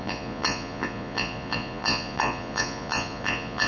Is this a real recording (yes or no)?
no